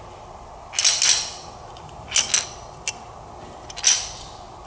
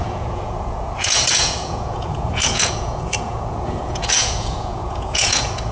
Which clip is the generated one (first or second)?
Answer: second